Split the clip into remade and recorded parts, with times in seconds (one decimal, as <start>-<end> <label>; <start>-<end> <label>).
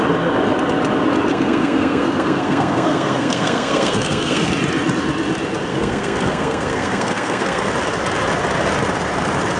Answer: 0.0-1.3 recorded; 1.3-4.5 remade; 4.5-5.7 recorded; 5.7-7.7 remade; 7.7-9.6 recorded